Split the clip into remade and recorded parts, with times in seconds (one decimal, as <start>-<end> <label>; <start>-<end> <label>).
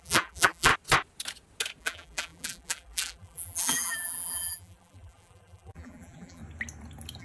0.0-0.7 remade; 0.7-1.8 recorded; 1.8-6.4 remade; 6.4-7.2 recorded